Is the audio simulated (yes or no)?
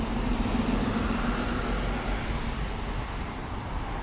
no